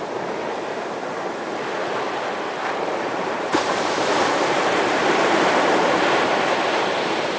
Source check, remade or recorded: remade